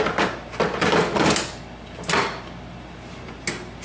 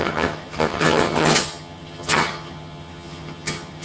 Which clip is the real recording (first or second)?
first